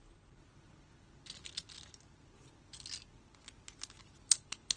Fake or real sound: real